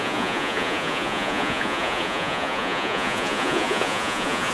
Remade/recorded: remade